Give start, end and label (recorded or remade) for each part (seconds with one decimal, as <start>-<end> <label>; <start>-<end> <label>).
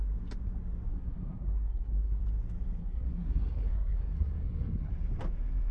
0.0-0.9 recorded; 0.9-2.2 remade; 2.2-2.8 recorded; 2.8-4.9 remade; 4.9-5.7 recorded